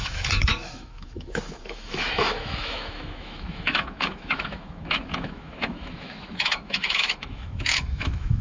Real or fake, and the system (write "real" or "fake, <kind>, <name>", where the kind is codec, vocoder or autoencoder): fake, autoencoder, DAC-VAE